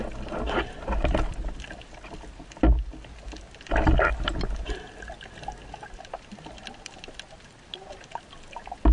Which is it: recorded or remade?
recorded